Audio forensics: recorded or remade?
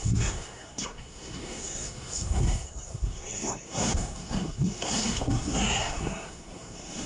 remade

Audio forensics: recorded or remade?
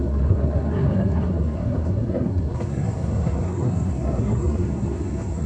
remade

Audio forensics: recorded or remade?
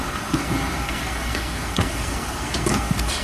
remade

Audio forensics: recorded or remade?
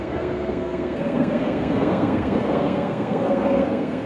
remade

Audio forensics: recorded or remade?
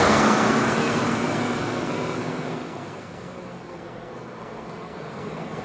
remade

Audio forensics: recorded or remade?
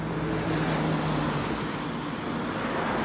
recorded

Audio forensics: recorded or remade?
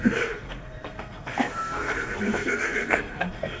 remade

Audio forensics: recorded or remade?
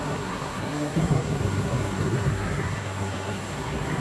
remade